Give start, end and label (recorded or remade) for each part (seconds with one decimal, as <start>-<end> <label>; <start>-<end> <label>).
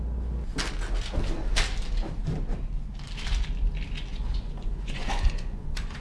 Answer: 0.0-4.1 recorded; 4.1-6.0 remade